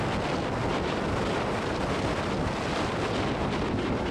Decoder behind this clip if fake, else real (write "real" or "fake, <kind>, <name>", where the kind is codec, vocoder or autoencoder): real